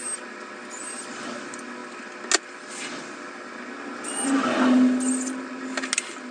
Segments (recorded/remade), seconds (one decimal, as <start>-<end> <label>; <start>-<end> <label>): 0.0-6.3 recorded